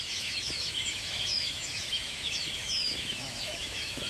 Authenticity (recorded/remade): remade